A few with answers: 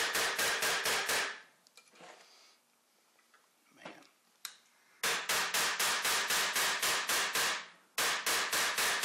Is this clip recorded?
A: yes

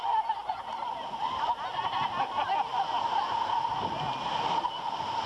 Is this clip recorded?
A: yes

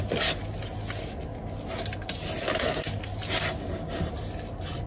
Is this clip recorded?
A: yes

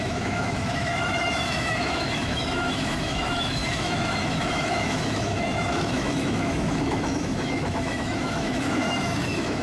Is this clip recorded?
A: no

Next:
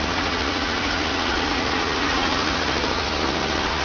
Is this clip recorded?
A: no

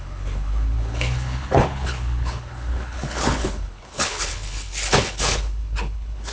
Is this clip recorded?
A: no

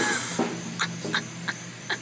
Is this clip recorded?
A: yes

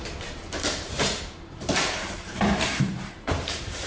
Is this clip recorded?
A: no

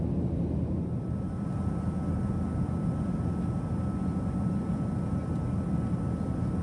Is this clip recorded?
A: yes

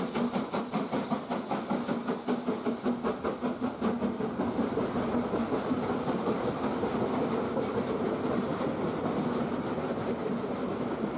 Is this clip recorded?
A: yes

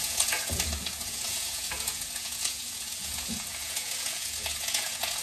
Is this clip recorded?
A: no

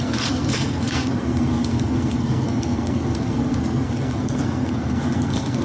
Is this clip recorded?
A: no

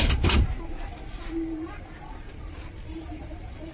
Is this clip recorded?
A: no